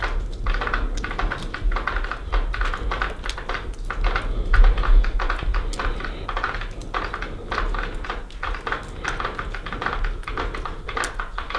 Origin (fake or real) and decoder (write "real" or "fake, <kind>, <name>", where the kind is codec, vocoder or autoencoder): real